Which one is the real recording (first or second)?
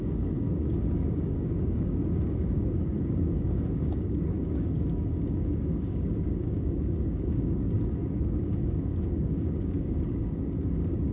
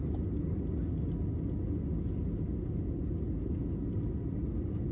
second